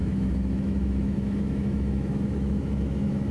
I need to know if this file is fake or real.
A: fake